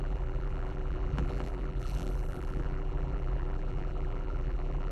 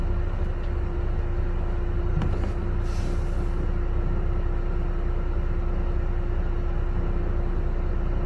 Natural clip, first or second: second